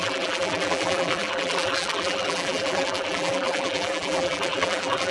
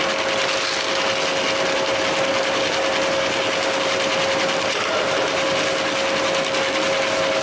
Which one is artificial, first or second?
first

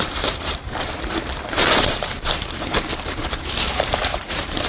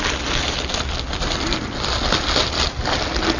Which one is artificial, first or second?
first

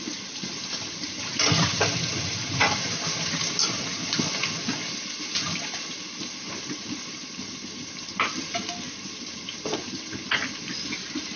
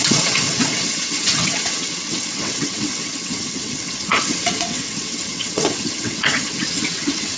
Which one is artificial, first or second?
second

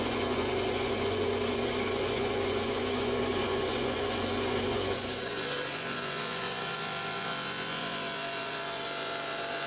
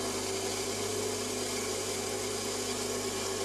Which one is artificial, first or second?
first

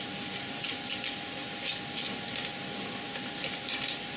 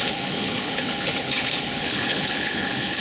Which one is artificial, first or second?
second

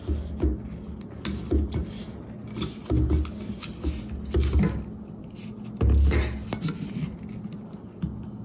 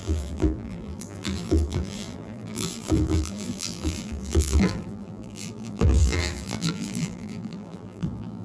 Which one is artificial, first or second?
second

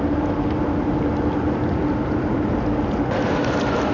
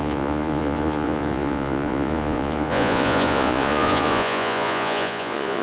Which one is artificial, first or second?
second